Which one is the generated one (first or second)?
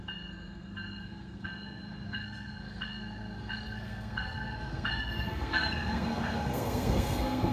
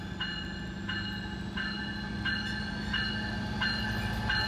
first